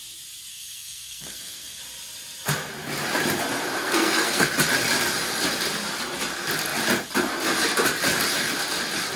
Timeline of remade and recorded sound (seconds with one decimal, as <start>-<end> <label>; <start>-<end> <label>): 0.0-0.5 recorded; 0.5-1.8 remade; 1.8-3.8 recorded; 3.8-4.5 remade; 4.5-9.2 recorded